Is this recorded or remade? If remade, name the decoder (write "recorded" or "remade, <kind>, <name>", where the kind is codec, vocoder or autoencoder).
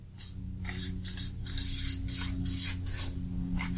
recorded